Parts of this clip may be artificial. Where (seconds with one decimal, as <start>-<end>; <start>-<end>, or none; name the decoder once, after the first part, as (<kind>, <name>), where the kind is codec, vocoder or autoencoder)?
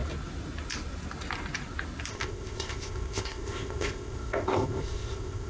2.1-5.5 (codec, ZipCodec)